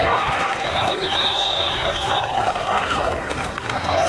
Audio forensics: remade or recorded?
remade